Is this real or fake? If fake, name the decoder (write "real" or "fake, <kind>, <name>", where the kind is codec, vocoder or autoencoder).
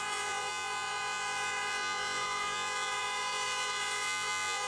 fake, vocoder, Vocos